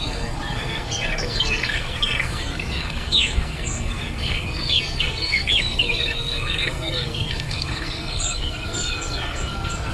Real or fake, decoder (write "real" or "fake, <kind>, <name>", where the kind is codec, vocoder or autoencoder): fake, codec, SNAC